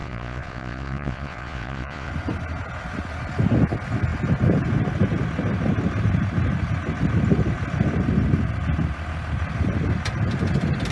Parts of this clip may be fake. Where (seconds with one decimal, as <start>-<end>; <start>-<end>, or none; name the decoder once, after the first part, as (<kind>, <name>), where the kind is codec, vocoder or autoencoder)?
0.0-2.1 (vocoder, Vocos)